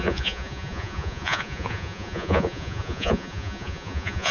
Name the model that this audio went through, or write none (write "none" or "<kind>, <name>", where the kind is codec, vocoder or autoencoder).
vocoder, Vocos